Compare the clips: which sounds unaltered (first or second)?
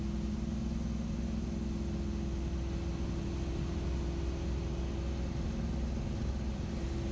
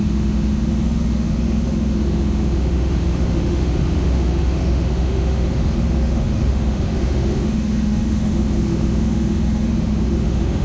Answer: first